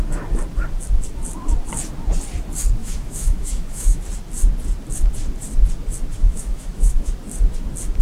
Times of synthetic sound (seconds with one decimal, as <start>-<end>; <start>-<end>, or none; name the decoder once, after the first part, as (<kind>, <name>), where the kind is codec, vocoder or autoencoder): 2.8-4.0 (autoencoder, DAC-VAE); 6.2-7.1